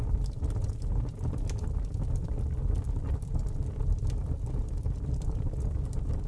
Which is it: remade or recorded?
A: recorded